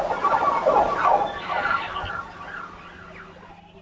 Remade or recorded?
recorded